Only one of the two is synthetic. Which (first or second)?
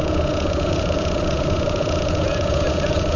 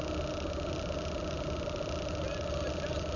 first